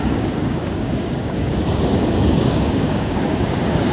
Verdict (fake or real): fake